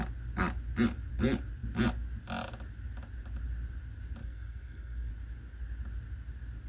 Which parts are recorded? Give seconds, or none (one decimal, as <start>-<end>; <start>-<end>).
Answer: 0.0-4.2; 5.1-6.7